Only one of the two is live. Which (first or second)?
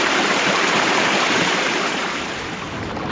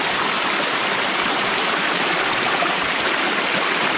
second